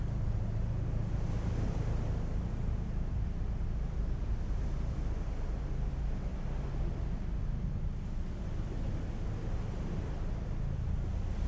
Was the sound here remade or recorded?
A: recorded